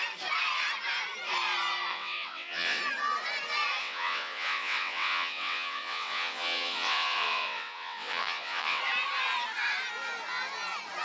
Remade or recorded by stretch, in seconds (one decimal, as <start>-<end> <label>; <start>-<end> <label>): 0.0-1.9 recorded; 1.9-2.8 remade; 2.8-3.8 recorded; 3.8-8.8 remade; 8.8-11.0 recorded